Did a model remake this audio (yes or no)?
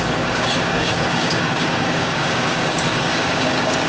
yes